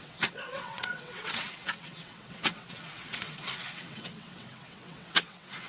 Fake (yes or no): yes